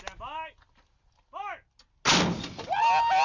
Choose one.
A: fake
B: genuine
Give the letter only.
B